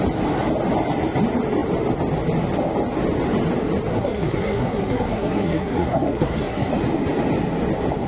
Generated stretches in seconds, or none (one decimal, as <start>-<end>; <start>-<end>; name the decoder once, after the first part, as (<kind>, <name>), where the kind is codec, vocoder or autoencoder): 3.9-6.7 (codec, SNAC)